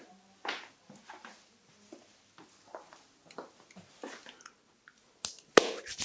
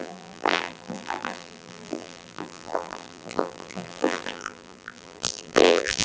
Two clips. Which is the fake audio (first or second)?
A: second